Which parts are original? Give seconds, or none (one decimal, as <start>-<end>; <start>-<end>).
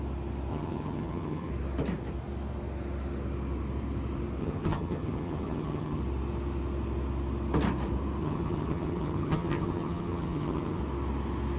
0.0-0.5; 1.5-4.4; 6.0-8.2; 10.8-11.6